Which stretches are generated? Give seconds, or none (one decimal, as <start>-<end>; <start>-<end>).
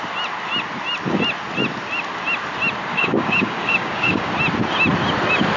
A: 2.9-4.3